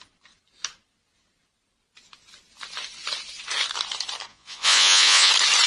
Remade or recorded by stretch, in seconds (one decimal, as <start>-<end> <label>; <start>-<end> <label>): 0.0-4.3 recorded; 4.3-5.3 remade; 5.3-5.7 recorded